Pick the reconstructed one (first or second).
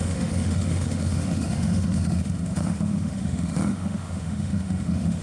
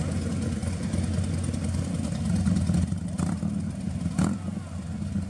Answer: first